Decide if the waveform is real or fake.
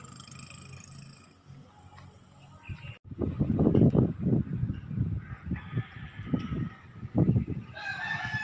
real